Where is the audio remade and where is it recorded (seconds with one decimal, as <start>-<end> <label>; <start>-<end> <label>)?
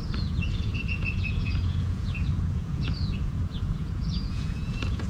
0.0-5.1 remade